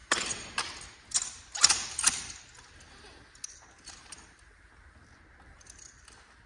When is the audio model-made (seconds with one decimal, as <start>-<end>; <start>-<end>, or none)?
none